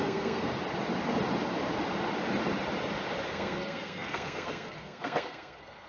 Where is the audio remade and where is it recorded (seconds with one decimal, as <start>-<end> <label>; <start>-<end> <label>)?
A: 0.0-0.5 remade; 0.5-3.3 recorded; 3.3-5.9 remade